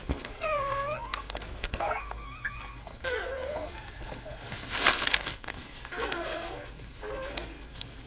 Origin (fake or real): fake